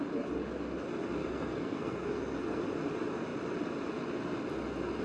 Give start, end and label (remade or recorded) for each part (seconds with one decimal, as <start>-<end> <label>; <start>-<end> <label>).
0.0-1.2 recorded; 1.2-2.6 remade; 2.6-5.0 recorded